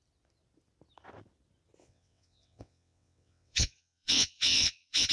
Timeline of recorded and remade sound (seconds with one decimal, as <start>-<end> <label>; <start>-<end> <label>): 0.0-1.8 recorded; 1.8-5.1 remade